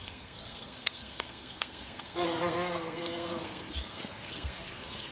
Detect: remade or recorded remade